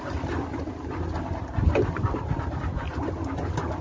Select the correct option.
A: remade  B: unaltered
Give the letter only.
B